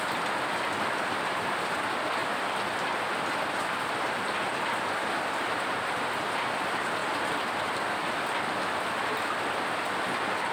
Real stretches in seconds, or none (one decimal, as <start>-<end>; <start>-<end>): 0.0-10.5